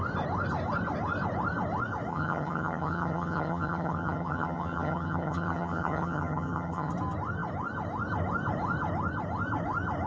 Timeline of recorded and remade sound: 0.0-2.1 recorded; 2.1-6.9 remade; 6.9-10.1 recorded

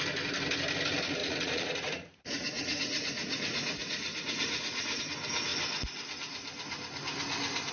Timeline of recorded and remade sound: 0.0-1.2 recorded; 1.2-5.0 remade; 5.0-7.7 recorded

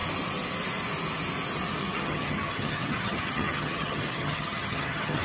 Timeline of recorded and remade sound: 0.0-1.8 recorded; 1.8-5.2 remade